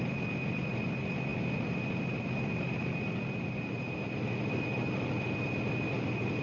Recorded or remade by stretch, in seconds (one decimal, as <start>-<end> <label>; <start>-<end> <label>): 0.0-6.4 recorded